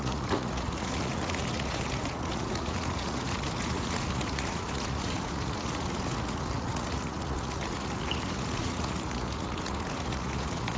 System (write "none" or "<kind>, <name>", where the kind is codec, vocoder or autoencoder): vocoder, Vocos